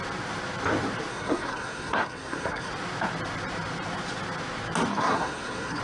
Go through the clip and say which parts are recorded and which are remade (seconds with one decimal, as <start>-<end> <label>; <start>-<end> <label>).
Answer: 0.0-1.1 recorded; 1.1-2.7 remade; 2.7-4.9 recorded; 4.9-5.8 remade